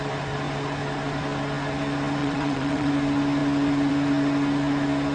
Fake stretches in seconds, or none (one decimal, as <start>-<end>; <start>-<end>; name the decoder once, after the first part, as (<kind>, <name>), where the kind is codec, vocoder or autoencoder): 2.2-2.9 (vocoder, WaveNeXt)